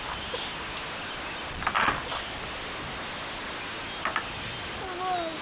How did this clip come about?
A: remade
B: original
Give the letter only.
B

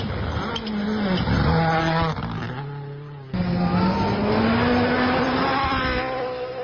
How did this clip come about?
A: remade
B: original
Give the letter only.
B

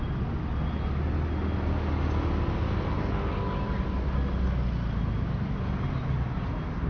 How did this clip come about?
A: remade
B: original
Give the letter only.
B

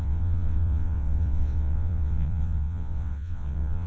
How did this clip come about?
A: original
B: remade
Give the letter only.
B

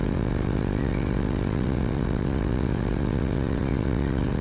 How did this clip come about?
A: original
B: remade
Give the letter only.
B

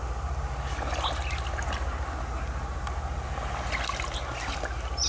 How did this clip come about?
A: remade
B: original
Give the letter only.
B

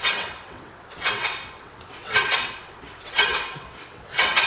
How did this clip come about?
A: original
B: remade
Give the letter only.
B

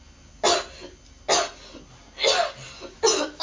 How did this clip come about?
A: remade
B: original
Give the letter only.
B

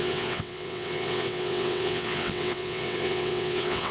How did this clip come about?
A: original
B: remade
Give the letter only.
B